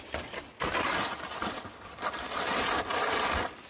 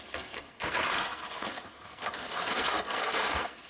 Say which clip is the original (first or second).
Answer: first